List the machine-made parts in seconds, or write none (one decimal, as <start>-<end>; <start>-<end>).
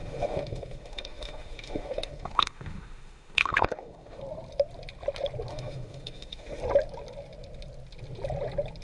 0.0-4.2; 5.5-6.6